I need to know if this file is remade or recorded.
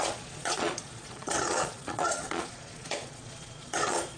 remade